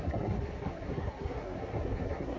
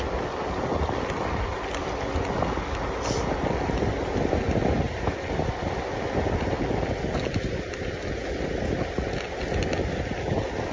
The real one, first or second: second